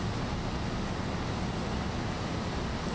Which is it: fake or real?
real